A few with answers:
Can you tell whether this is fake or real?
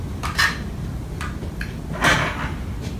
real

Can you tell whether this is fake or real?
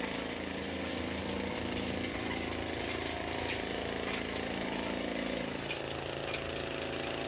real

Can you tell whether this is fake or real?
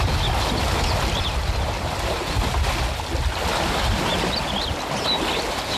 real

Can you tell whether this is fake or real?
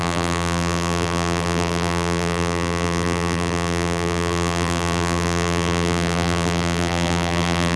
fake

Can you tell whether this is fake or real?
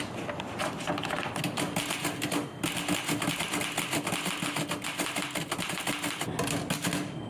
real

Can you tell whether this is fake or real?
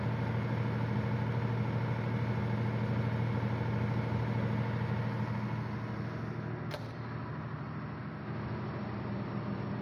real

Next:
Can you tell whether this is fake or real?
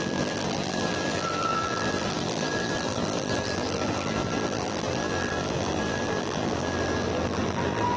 fake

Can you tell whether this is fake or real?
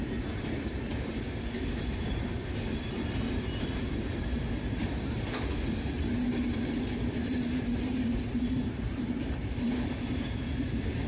fake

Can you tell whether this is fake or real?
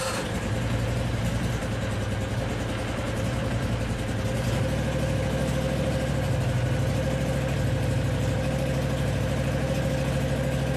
real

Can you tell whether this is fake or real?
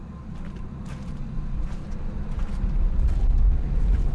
fake